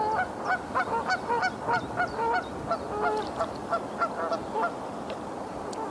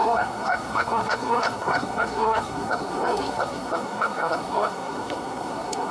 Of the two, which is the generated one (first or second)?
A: second